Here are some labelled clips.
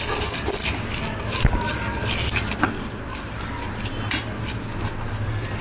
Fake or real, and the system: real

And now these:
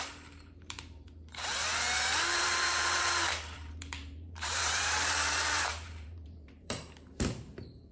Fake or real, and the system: fake, vocoder, BigVGAN v2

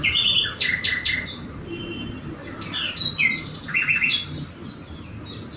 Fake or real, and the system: real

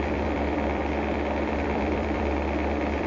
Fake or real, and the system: fake, vocoder, BigVGAN v2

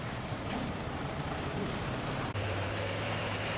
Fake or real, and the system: fake, vocoder, BigVGAN v2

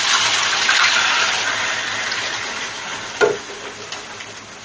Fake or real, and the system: real